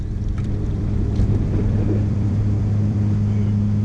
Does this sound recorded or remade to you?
remade